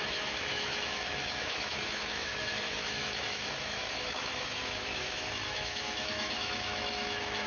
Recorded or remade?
remade